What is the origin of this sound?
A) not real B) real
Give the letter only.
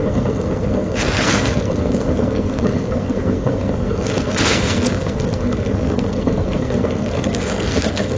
A